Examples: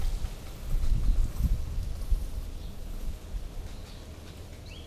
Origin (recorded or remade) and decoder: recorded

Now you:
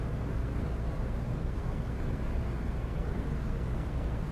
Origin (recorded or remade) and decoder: remade, codec, SNAC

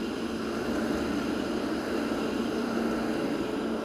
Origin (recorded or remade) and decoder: recorded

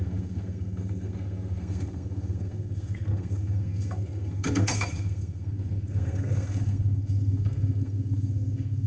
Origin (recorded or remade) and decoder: remade, codec, SNAC